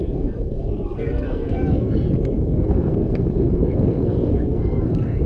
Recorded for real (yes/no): no